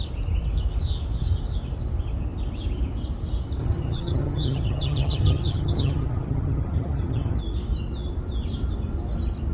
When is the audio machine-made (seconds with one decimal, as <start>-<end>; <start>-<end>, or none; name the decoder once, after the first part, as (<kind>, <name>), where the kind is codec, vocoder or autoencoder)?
3.6-7.4 (vocoder, HiFi-GAN)